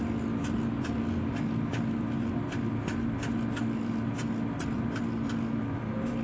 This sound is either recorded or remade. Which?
recorded